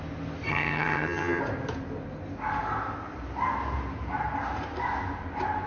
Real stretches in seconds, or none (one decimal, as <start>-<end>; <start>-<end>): 0.0-0.5; 1.4-5.7